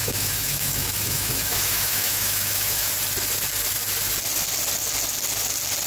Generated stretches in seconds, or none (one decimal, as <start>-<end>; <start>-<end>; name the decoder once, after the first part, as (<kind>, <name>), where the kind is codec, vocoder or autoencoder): 0.0-2.9 (autoencoder, DAC-VAE)